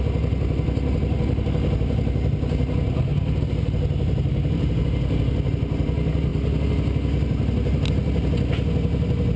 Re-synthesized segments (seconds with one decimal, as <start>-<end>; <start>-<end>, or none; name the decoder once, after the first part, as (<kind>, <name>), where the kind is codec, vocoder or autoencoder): none